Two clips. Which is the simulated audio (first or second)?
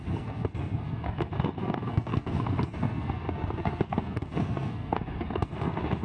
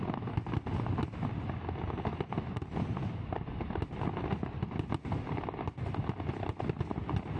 first